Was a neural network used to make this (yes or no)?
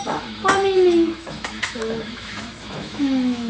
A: yes